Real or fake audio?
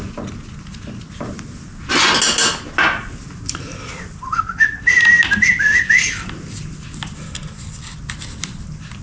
real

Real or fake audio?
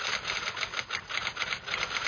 real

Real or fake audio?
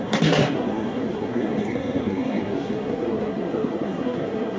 fake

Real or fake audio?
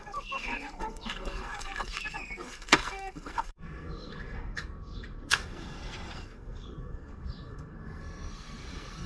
fake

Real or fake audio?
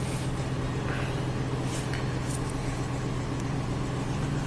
real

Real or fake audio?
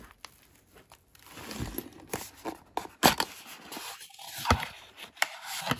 real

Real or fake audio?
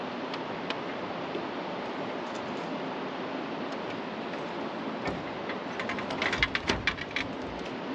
real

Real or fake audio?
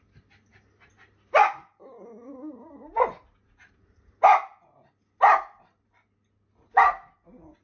real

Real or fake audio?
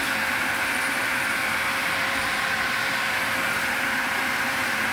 fake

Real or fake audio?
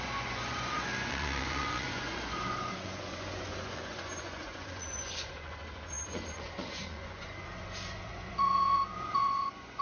fake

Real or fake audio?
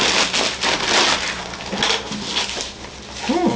real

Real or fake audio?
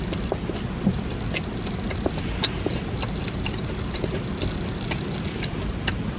real